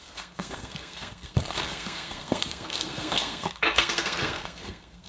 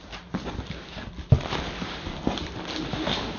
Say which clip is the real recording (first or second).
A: second